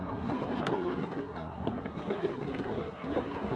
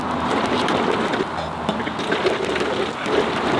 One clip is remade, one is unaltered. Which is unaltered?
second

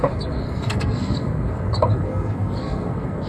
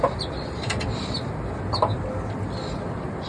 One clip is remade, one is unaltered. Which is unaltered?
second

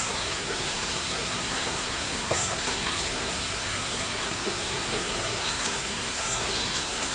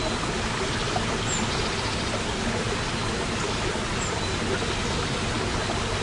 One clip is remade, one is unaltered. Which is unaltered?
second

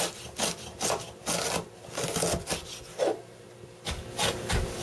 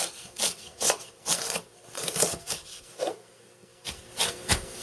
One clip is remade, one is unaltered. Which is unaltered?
first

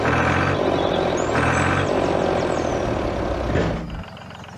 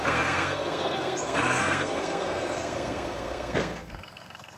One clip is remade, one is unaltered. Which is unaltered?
first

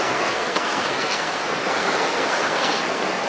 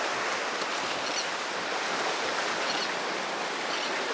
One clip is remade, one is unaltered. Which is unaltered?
second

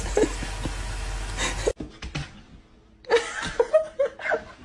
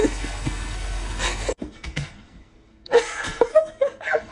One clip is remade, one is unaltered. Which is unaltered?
first